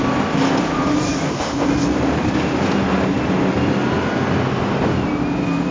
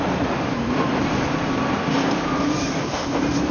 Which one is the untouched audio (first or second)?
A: first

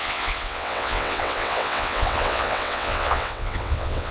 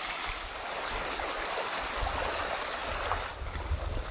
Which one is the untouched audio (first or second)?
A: second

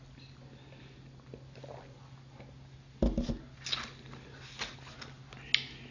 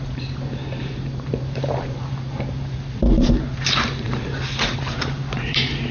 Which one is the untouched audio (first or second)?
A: first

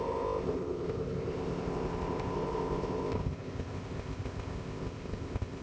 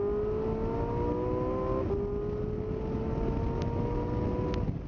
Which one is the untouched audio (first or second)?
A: second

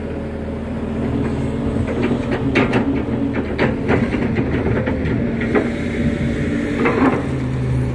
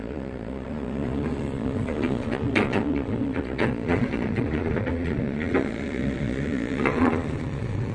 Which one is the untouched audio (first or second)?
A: first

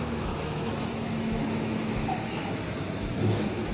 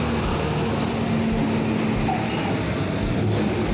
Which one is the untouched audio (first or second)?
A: second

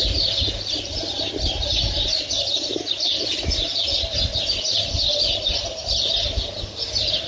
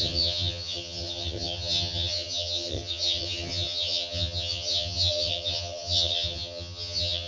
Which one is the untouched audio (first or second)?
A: first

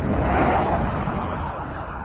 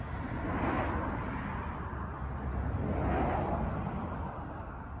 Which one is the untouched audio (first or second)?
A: second